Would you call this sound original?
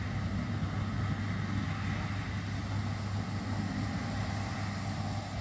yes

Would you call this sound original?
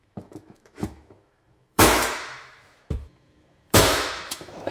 no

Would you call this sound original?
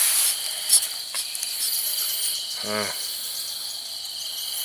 yes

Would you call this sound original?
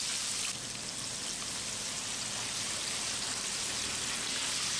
yes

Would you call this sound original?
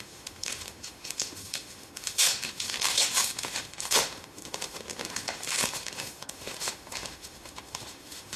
no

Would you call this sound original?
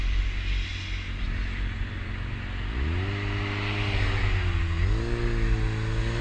yes